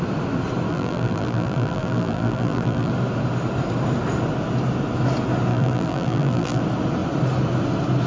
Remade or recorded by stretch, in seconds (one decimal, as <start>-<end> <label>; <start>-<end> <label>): 0.0-0.7 recorded; 0.7-2.9 remade; 2.9-5.5 recorded; 5.5-6.6 remade; 6.6-8.1 recorded